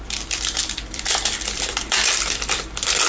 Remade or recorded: remade